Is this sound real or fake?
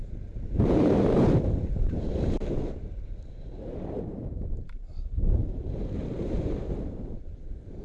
fake